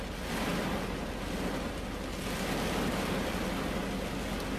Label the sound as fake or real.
real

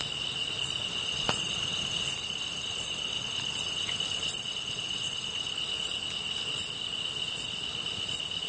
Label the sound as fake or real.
real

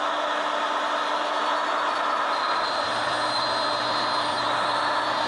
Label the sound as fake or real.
real